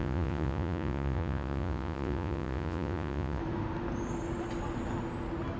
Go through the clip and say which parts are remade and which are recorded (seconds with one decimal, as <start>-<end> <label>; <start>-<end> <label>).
0.0-3.4 remade; 3.4-5.6 recorded